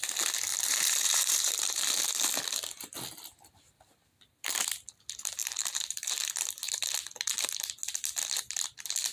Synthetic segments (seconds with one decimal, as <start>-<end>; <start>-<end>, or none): 0.5-1.9; 5.4-6.5